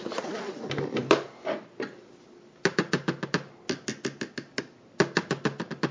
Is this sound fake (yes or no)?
no